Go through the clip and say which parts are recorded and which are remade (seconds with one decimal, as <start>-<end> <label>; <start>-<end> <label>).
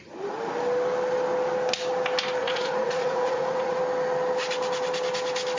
0.0-2.4 recorded; 2.4-3.8 remade; 3.8-5.6 recorded